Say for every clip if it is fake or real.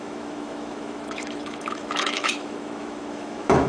fake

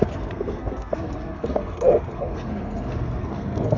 fake